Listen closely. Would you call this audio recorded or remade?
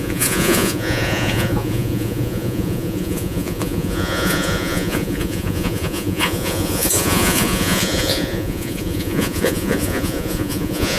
remade